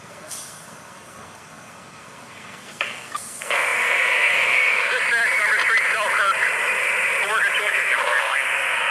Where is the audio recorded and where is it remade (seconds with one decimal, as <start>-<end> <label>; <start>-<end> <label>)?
0.0-4.9 remade; 4.9-7.6 recorded; 7.6-8.9 remade